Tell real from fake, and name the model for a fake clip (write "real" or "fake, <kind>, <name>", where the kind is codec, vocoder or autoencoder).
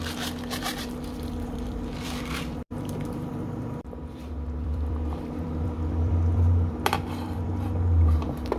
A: fake, vocoder, BigVGAN v2